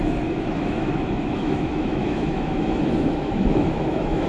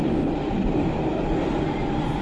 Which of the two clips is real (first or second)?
second